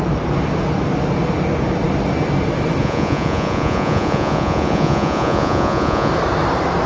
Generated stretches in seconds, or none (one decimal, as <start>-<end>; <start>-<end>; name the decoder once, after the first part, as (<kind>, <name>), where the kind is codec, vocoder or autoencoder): 2.8-6.1 (vocoder, Vocos)

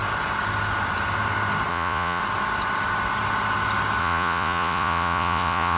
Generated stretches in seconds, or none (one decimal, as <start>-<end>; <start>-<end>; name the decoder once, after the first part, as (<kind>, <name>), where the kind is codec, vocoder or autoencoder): 1.7-2.2 (vocoder, Vocos); 4.0-5.8

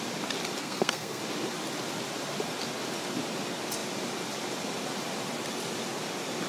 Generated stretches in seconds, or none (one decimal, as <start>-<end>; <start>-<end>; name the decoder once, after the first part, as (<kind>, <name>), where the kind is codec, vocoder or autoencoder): 0.6-1.2 (codec, SNAC)

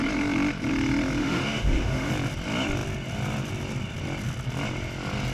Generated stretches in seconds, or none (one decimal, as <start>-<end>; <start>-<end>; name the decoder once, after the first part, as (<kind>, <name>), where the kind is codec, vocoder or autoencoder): 1.2-2.1 (autoencoder, DAC-VAE)

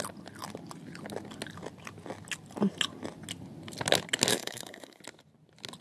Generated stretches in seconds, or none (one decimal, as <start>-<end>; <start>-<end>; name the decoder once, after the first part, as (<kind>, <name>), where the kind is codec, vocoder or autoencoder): 4.3-5.0 (codec, SNAC)

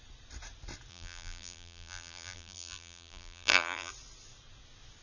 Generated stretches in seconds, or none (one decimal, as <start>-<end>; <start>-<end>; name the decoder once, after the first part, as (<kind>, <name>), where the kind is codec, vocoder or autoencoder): 0.9-3.9 (vocoder, BigVGAN v2)

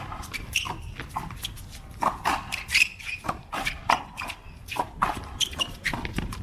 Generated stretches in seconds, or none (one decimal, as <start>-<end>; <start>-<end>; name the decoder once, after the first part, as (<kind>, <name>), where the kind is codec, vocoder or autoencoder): 0.0-0.6 (vocoder, BigVGAN v2); 2.3-6.4

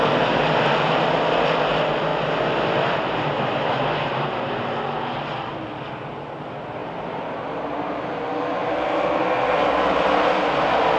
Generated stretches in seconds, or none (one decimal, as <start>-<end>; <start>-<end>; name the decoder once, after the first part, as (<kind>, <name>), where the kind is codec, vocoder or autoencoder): 2.1-4.4 (vocoder, BigVGAN v2); 6.8-8.2